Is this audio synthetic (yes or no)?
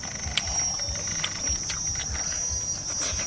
no